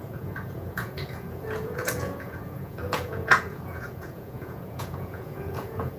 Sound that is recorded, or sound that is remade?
remade